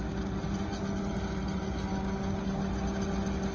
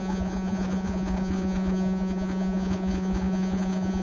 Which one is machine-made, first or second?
second